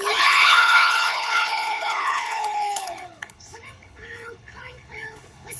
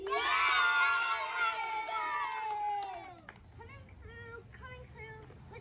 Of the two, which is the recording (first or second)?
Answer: second